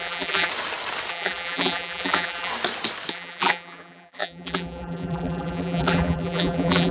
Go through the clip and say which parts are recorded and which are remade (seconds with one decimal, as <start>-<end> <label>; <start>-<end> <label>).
0.0-0.5 remade; 0.5-1.1 recorded; 1.1-2.5 remade; 2.5-3.1 recorded; 3.1-6.9 remade